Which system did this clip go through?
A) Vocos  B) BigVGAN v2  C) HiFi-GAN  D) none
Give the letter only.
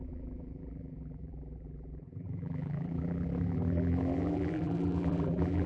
B